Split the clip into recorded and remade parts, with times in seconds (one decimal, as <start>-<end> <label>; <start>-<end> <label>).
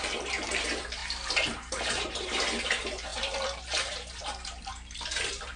0.0-5.6 remade